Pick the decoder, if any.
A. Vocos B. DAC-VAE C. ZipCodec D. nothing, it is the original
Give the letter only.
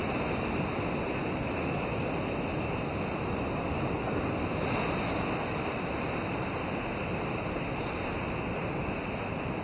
D